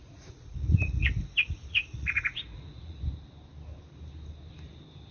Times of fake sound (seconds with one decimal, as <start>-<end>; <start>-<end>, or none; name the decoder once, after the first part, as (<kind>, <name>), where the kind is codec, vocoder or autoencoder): 0.0-1.1 (vocoder, Vocos); 1.7-3.0